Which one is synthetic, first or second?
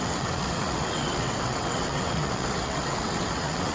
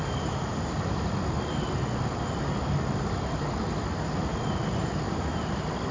first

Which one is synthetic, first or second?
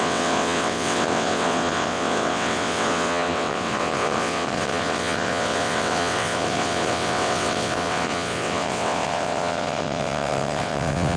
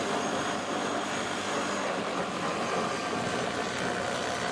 first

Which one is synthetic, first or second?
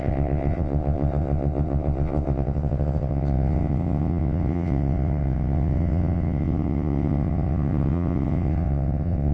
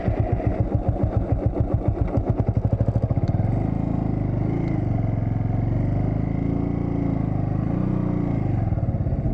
first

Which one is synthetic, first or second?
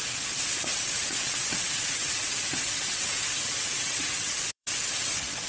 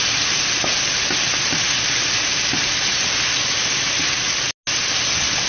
first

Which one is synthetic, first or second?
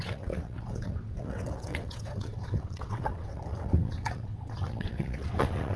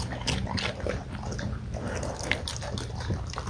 first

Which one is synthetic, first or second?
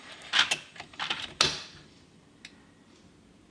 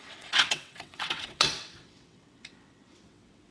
second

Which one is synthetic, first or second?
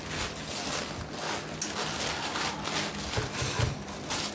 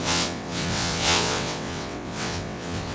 second